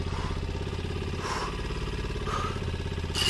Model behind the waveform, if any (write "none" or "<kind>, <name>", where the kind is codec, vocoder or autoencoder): none